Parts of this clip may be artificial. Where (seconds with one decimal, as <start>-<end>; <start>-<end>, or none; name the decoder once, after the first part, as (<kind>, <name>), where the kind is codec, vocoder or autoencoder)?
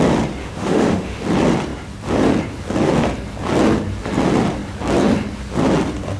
0.4-1.2 (autoencoder, DAC-VAE)